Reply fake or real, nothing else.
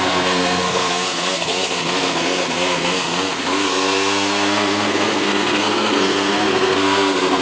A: fake